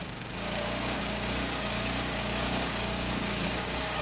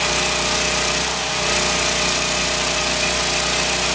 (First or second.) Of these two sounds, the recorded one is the second